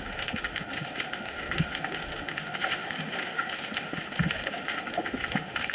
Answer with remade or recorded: remade